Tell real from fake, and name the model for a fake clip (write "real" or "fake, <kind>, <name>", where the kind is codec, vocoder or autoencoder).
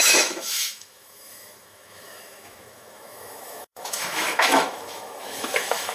fake, autoencoder, DAC-VAE